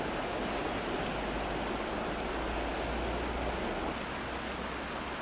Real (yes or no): yes